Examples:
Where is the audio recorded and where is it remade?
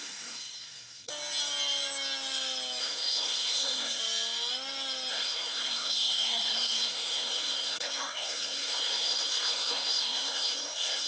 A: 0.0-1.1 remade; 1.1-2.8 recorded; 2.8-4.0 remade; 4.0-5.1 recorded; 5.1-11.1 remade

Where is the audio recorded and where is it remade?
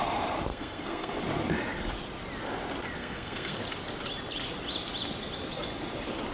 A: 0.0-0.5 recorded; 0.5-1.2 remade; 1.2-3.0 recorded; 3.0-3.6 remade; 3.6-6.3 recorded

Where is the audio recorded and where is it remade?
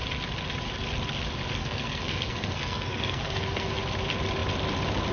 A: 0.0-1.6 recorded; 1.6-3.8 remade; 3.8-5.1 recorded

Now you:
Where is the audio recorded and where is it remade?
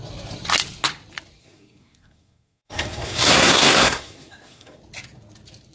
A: 0.0-1.4 recorded; 1.4-4.8 remade; 4.8-5.7 recorded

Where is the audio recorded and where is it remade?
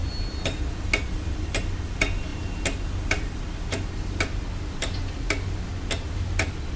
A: 0.0-6.8 recorded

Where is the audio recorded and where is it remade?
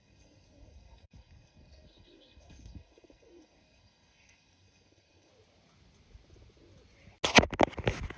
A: 0.0-5.3 remade; 5.3-8.2 recorded